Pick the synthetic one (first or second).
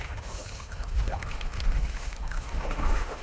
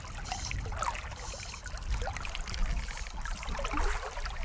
first